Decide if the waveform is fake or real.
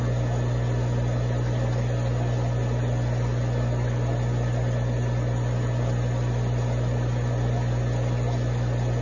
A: real